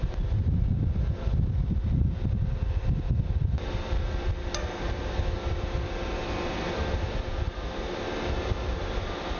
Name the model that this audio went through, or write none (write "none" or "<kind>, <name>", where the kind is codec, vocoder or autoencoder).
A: none